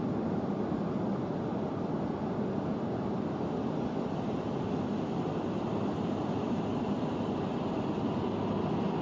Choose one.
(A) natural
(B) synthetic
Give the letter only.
A